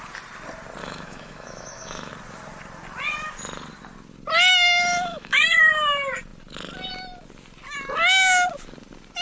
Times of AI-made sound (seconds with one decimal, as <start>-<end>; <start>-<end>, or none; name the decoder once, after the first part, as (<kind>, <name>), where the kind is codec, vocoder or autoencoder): 0.8-2.1 (autoencoder, DAC-VAE); 4.5-5.6